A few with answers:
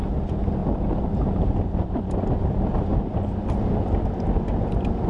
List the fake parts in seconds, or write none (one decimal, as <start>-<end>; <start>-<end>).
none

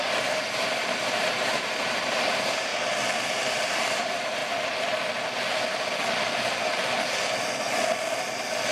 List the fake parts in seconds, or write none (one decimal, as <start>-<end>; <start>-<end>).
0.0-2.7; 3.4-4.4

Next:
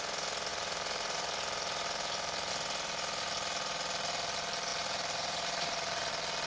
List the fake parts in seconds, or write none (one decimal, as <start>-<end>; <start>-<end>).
0.5-2.5; 4.7-6.1

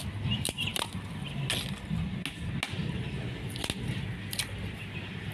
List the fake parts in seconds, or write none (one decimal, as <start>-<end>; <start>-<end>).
none

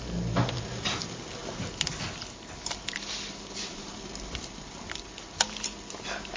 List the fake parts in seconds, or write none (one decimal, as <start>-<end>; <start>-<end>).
0.0-6.4

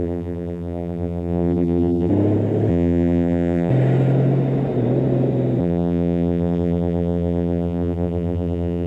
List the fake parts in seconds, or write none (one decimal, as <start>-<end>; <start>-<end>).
0.0-2.1; 2.7-3.7; 5.6-8.9

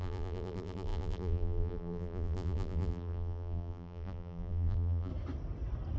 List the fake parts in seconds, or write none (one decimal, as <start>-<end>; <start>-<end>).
0.0-5.1

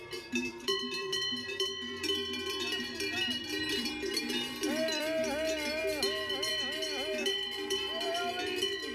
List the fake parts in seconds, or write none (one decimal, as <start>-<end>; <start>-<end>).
0.0-5.8; 6.5-8.9